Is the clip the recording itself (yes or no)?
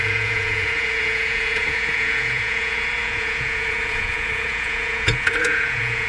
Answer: no